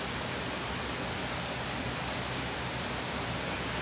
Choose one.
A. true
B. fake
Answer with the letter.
A